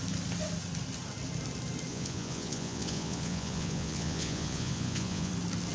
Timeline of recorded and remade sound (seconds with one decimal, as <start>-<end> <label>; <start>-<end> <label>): 0.0-1.9 recorded; 1.9-5.3 remade; 5.3-5.7 recorded